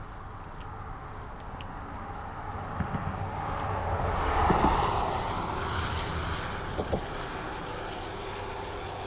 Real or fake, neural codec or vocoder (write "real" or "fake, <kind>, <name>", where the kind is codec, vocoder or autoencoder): real